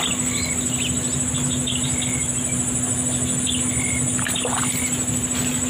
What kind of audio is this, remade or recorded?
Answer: recorded